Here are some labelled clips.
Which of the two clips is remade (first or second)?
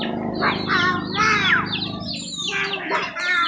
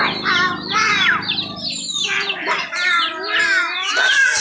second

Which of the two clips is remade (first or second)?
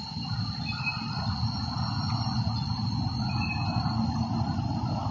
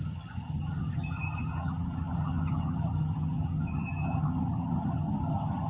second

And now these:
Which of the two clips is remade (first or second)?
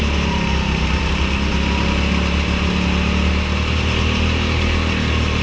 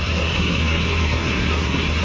second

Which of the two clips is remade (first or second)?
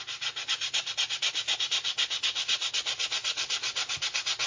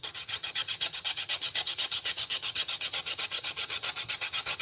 second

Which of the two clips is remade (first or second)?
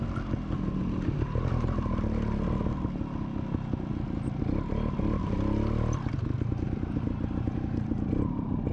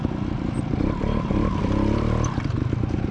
second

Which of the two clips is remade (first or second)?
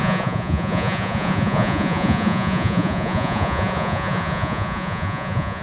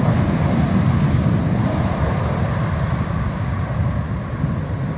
first